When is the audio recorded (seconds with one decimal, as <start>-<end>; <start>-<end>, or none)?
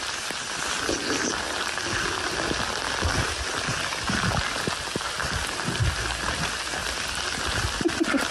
0.0-6.8